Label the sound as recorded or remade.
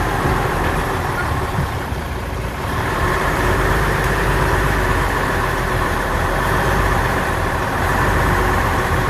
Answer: remade